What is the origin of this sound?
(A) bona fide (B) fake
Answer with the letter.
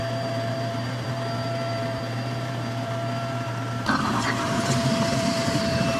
B